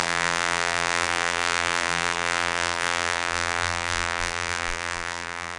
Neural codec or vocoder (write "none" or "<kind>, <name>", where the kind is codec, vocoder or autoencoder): vocoder, BigVGAN v2